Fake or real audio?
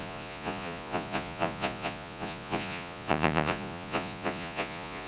fake